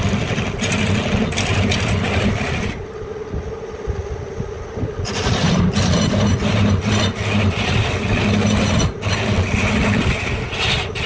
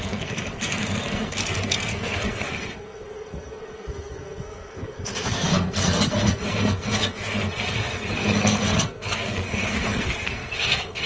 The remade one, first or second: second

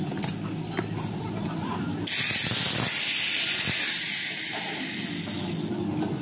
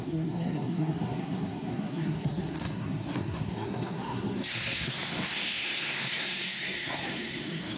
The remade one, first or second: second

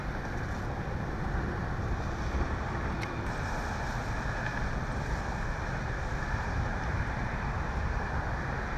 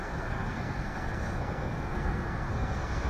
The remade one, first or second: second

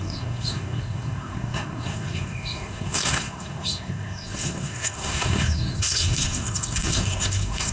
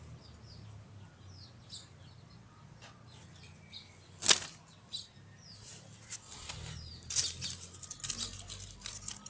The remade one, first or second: first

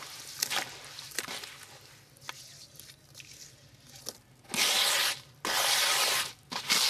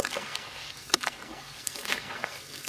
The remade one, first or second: second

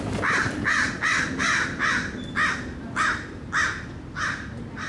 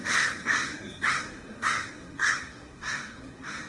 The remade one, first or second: second